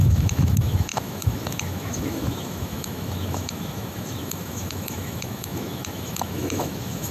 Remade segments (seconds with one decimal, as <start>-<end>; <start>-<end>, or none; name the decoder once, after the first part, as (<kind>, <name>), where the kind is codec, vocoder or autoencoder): 0.0-7.1 (autoencoder, DAC-VAE)